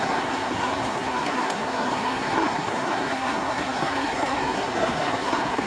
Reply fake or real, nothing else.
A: fake